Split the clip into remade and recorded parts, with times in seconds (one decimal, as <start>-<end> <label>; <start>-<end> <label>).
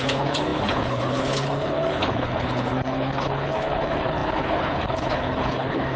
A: 0.0-6.0 remade